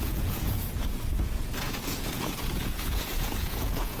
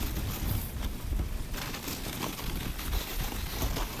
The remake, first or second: first